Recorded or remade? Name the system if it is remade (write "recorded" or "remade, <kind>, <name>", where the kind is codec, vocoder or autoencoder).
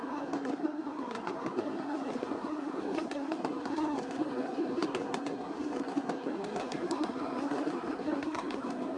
remade, codec, SNAC